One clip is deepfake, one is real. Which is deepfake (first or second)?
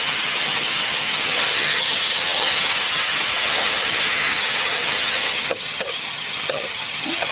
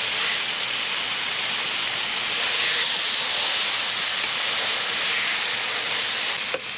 first